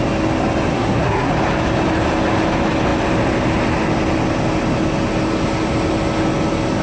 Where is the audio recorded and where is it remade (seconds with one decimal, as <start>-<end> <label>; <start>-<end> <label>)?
0.0-0.7 recorded; 0.7-1.3 remade; 1.3-6.8 recorded